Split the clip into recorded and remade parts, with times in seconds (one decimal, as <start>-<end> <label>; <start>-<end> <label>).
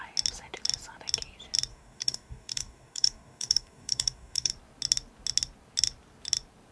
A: 0.0-1.7 recorded; 1.7-4.5 remade; 4.5-6.7 recorded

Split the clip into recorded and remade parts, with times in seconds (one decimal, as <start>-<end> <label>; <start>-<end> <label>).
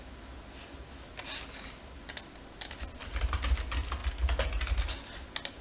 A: 0.0-5.6 recorded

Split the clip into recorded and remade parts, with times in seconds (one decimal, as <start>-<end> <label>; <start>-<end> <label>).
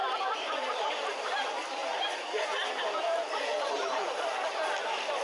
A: 0.0-0.8 remade; 0.8-1.8 recorded; 1.8-4.1 remade; 4.1-5.2 recorded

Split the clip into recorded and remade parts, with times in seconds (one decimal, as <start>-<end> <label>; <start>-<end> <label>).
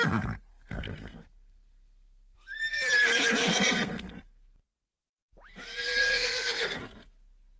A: 0.0-0.5 recorded; 0.5-2.6 remade; 2.6-3.4 recorded; 3.4-4.1 remade; 4.1-6.0 recorded; 6.0-6.8 remade; 6.8-7.6 recorded